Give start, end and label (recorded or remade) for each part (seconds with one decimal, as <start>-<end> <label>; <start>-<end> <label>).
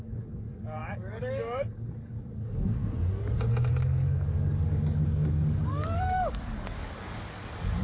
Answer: 0.0-2.8 remade; 2.8-3.7 recorded; 3.7-7.8 remade